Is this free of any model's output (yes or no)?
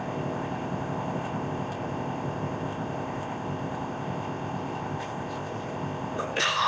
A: no